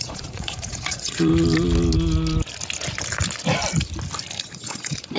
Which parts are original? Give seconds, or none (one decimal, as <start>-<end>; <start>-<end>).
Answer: 1.3-4.4